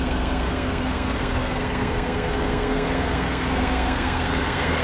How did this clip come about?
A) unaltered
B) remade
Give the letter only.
B